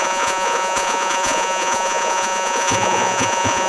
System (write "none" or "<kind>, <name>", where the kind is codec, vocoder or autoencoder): vocoder, Vocos